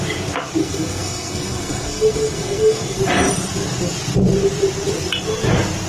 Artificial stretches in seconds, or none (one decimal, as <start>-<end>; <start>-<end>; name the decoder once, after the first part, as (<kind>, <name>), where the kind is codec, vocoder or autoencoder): 0.6-3.0 (codec, SNAC)

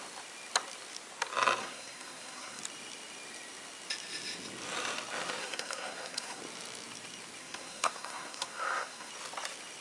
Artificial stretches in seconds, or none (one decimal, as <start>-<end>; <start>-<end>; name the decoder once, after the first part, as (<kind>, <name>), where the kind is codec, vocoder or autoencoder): 1.6-2.6 (codec, SNAC); 5.4-6.4; 7.4-9.1

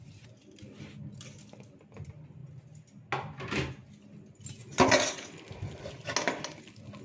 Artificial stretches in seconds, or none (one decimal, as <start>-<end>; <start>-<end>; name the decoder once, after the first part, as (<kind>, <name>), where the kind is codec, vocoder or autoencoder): none

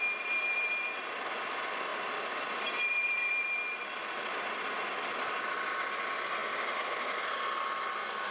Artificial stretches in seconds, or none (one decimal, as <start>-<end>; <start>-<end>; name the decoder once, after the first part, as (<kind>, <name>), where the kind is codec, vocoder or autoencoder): none

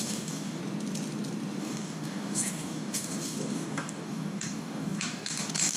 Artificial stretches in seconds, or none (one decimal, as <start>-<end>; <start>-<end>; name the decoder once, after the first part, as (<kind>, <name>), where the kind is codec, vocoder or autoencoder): 0.0-0.6 (codec, DAC); 1.6-5.8

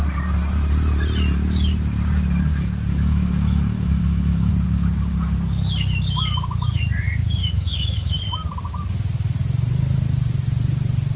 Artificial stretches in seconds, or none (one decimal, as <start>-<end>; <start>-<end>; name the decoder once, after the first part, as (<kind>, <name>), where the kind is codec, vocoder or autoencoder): 2.9-4.5 (autoencoder, DAC-VAE); 7.4-8.2